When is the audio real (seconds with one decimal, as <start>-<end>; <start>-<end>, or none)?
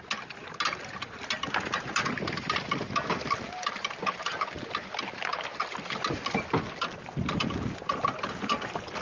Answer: 0.0-9.0